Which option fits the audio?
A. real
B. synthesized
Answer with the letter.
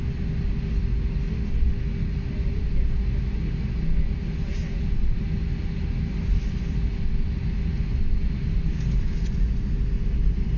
A